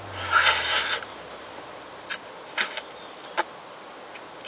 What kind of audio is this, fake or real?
real